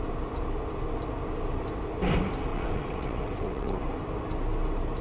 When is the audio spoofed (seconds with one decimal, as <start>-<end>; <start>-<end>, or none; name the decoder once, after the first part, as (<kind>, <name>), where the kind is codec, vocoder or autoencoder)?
2.5-3.9 (vocoder, WaveNeXt)